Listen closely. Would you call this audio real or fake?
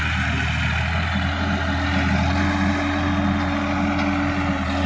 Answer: real